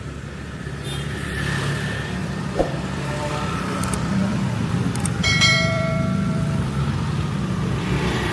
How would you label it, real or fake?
fake